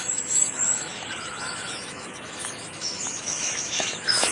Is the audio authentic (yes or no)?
no